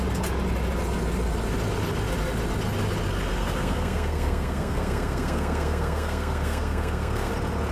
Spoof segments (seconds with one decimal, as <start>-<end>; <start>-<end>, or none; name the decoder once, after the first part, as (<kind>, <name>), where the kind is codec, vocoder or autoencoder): 3.3-7.3 (codec, SNAC)